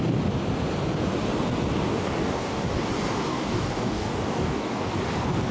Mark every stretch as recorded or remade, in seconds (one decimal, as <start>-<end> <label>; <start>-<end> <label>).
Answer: 0.0-1.9 recorded; 1.9-2.9 remade; 2.9-3.3 recorded; 3.3-4.9 remade; 4.9-5.5 recorded